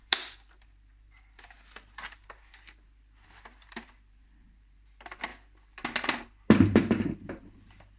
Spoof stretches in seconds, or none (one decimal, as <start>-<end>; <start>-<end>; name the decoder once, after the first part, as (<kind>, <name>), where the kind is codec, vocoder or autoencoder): 0.0-5.3 (vocoder, BigVGAN v2); 6.2-8.0